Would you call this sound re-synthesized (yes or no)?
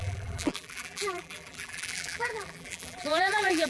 yes